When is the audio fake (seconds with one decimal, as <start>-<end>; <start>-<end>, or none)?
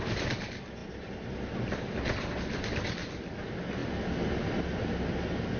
none